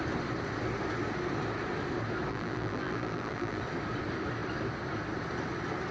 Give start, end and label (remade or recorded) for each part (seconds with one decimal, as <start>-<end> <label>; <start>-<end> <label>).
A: 0.0-2.3 recorded; 2.3-3.6 remade; 3.6-5.9 recorded